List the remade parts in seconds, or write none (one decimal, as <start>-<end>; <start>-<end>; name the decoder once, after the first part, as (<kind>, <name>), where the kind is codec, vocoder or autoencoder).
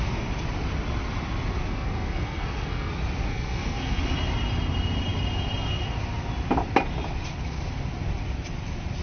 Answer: 1.7-2.9 (codec, SNAC); 3.3-4.0